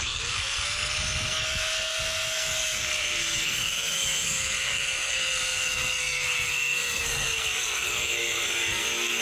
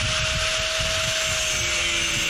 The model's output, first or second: first